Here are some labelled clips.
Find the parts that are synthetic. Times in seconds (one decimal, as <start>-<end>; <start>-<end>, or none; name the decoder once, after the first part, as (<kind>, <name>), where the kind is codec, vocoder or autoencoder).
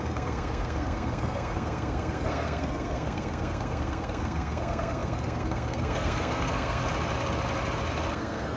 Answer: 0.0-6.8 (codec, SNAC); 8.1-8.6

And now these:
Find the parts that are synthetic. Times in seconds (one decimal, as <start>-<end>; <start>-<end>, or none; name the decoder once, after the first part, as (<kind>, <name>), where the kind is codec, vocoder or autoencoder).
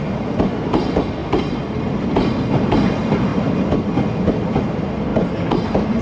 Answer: 1.2-2.3 (vocoder, BigVGAN v2); 3.3-3.9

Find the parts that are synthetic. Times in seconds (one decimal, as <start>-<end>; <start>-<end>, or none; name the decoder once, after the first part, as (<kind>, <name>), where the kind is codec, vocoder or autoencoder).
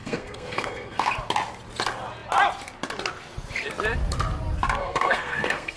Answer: 0.0-1.1 (codec, SNAC); 4.8-5.8